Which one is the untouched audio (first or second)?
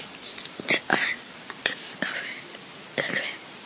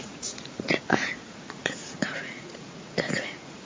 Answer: first